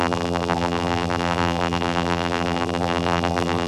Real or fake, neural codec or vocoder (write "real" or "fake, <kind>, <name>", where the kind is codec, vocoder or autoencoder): fake, vocoder, BigVGAN v2